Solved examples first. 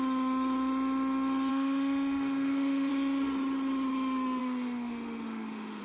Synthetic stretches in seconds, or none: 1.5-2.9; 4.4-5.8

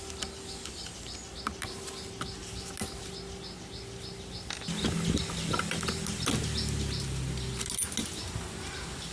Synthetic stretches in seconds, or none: none

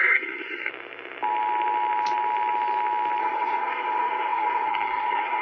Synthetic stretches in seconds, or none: 0.0-0.7; 3.2-5.4

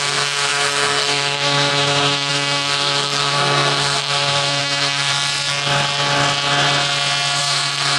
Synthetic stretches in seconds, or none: 0.0-5.1; 7.4-8.0

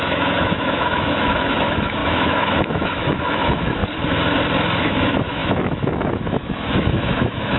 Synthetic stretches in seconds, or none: 0.0-3.8; 4.8-7.6

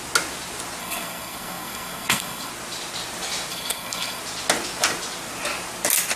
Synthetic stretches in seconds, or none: 0.8-2.5; 3.5-4.2

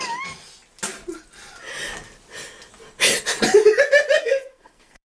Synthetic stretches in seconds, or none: 4.2-5.1